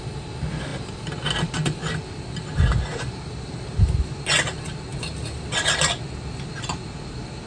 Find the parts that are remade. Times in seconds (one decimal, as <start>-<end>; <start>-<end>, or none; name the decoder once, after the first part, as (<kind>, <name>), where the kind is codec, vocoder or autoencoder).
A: none